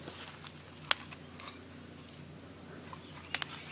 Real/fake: real